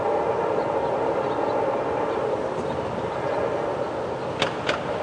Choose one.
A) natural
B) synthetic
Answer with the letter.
A